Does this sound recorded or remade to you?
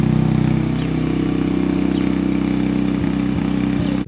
recorded